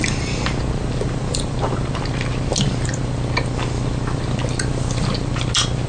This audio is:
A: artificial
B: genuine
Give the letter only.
B